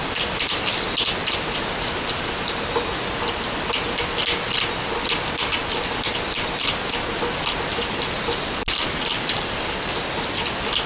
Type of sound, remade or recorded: recorded